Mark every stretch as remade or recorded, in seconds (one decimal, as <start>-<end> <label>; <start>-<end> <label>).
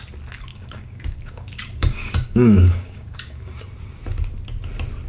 0.0-0.5 recorded; 0.5-3.6 remade; 3.6-5.1 recorded